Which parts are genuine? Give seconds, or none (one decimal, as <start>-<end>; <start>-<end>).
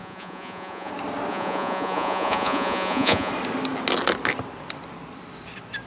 0.9-1.3; 3.3-5.9